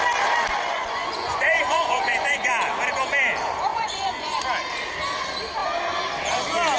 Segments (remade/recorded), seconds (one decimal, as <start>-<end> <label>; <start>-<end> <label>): 0.0-0.7 recorded; 0.7-2.5 remade; 2.5-3.7 recorded; 3.7-4.4 remade; 4.4-6.8 recorded